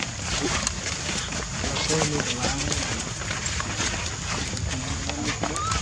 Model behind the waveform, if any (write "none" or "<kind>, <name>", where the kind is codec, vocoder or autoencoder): vocoder, BigVGAN v2